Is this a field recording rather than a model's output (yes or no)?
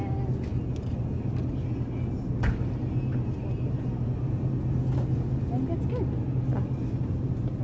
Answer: yes